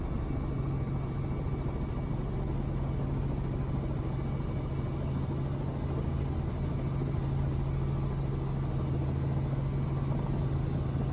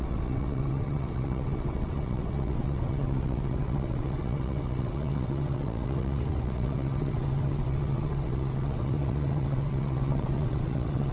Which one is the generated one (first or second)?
second